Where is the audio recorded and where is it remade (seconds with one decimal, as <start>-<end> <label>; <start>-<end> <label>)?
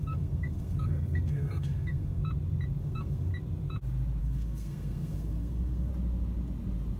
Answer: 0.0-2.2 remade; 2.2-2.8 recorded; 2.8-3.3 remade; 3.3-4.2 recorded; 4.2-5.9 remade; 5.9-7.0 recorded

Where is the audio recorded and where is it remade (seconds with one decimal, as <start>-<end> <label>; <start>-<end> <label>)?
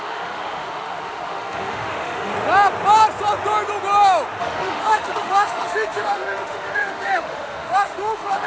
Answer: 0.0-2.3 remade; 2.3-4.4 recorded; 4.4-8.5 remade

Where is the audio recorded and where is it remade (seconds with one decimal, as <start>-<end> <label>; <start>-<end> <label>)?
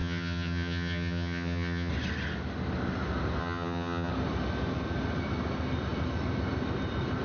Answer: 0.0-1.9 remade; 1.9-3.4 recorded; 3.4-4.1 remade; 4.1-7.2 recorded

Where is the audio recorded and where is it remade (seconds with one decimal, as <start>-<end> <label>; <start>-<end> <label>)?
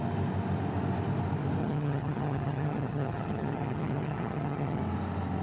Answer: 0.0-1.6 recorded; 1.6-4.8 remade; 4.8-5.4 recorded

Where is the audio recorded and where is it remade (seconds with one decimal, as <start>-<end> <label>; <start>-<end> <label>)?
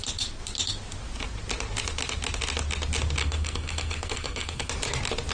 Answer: 0.0-3.2 recorded; 3.2-4.7 remade; 4.7-5.3 recorded